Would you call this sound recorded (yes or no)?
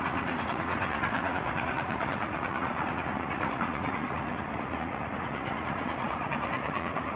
no